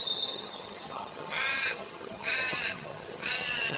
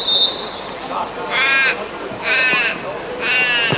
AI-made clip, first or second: first